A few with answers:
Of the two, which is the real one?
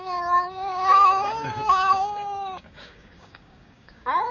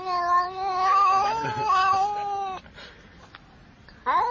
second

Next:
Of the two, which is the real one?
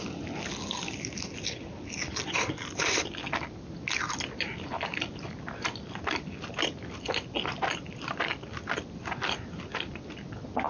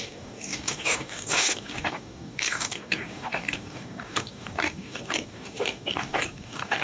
first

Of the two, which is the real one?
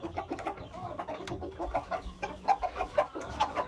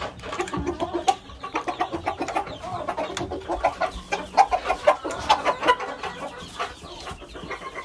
second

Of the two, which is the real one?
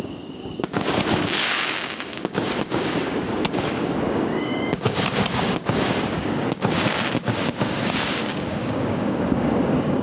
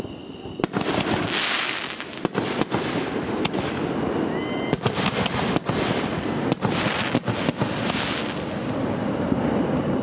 second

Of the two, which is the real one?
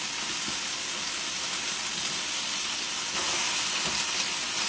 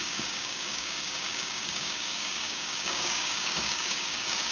first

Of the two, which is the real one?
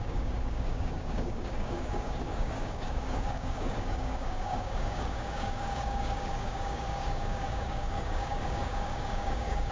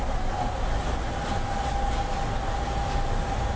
second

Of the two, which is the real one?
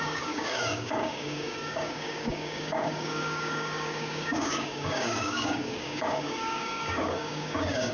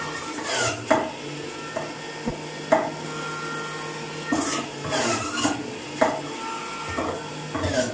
second